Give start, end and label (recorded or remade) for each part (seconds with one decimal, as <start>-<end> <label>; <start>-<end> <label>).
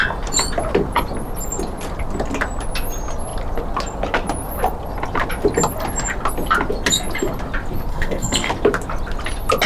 0.0-7.9 recorded; 7.9-8.5 remade; 8.5-9.7 recorded